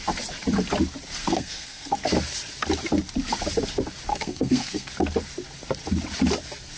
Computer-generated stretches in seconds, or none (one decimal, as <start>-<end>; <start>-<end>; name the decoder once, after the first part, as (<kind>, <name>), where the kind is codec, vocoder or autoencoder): 1.2-1.9 (codec, SNAC); 4.1-4.9